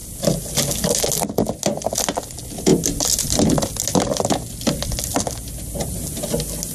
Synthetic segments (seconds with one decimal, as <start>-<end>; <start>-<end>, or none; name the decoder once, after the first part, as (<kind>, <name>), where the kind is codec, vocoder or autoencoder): none